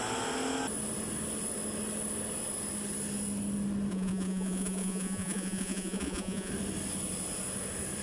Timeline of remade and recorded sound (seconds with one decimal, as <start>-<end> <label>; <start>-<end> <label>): 0.0-3.9 recorded; 3.9-6.5 remade; 6.5-8.0 recorded